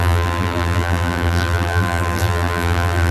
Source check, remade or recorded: remade